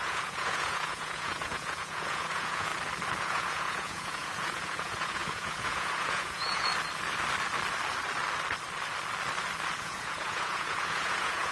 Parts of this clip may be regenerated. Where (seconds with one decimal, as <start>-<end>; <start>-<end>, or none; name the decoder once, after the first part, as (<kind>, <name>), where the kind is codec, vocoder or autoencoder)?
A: 0.0-2.7 (vocoder, Vocos); 3.2-6.7; 9.8-11.5